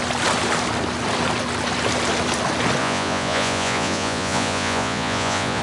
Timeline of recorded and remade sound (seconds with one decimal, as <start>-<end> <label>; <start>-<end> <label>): 0.0-2.8 recorded; 2.8-5.6 remade